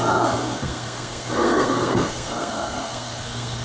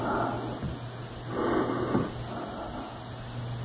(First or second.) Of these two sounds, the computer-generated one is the first